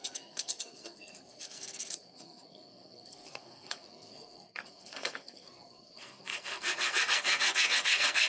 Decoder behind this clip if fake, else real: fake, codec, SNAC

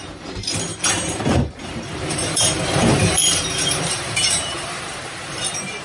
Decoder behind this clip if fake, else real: fake, vocoder, BigVGAN v2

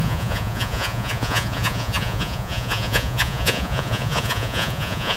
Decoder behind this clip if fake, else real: fake, vocoder, Vocos